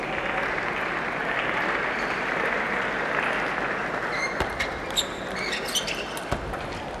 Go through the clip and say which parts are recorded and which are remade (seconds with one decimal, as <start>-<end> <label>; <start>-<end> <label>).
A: 0.0-7.0 recorded